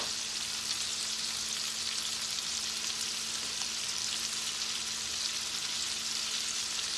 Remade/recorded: recorded